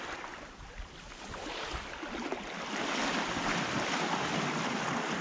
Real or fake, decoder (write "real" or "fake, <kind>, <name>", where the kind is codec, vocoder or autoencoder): real